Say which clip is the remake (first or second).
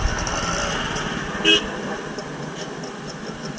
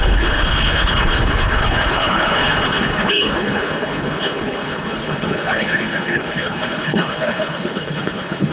second